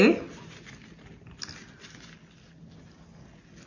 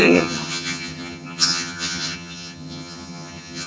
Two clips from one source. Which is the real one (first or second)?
first